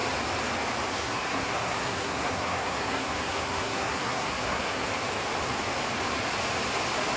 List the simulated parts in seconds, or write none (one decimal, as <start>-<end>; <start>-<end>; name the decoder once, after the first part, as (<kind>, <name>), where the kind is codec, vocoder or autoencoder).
0.9-4.9 (codec, SNAC)